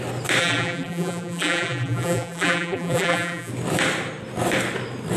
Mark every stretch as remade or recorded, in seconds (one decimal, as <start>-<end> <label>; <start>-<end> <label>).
0.0-0.4 recorded; 0.4-3.5 remade; 3.5-5.2 recorded